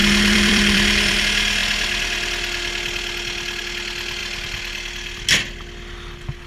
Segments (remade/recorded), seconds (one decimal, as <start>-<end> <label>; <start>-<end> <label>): 0.0-1.2 remade; 1.2-6.5 recorded